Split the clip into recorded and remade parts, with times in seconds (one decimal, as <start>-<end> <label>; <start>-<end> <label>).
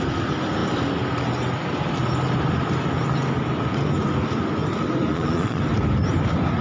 0.0-5.1 recorded; 5.1-5.6 remade; 5.6-6.6 recorded